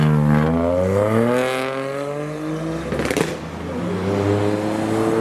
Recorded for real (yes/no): yes